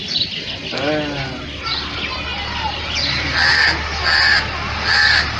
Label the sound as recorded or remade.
recorded